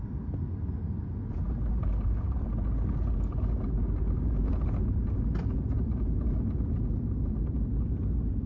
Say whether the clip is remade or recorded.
recorded